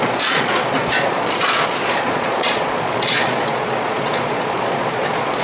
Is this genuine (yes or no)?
no